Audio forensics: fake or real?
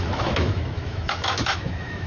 fake